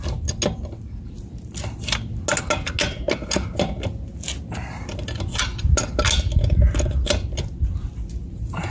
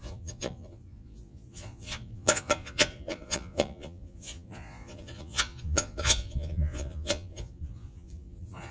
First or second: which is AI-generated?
second